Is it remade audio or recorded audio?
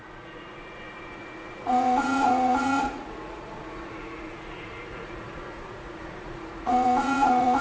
remade